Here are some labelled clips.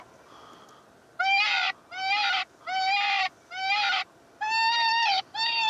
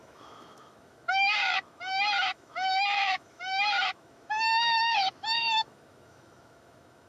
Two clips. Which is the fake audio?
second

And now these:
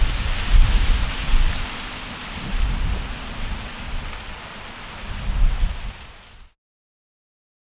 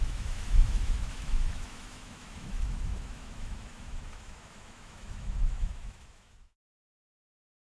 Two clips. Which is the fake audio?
second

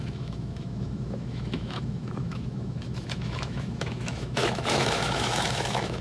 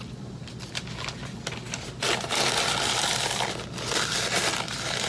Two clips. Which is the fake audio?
first